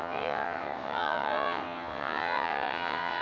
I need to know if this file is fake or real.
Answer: fake